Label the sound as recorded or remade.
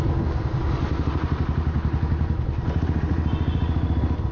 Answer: recorded